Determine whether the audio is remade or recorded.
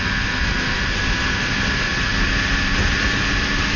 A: recorded